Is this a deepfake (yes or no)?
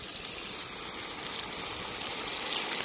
no